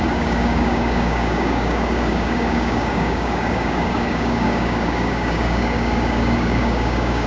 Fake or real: fake